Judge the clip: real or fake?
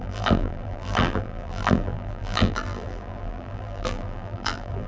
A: fake